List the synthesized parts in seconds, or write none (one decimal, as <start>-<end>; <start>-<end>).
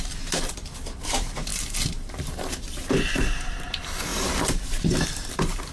0.0-5.7